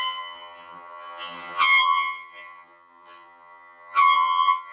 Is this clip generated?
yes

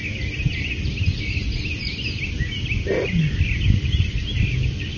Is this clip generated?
no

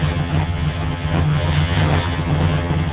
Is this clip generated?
yes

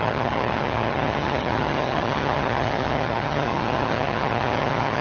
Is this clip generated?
yes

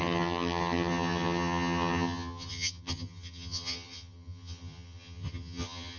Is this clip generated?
yes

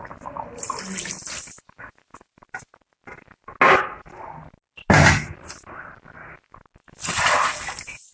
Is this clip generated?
no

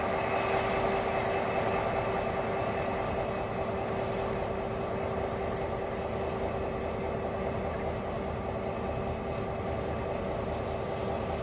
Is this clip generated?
no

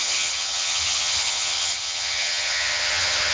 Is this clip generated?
yes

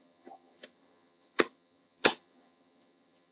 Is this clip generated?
yes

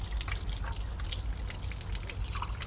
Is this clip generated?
no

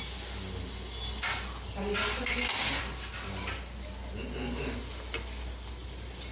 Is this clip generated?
no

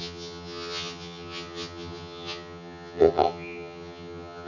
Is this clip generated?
yes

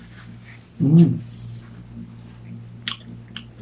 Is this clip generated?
no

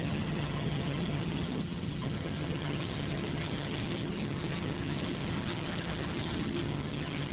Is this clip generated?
yes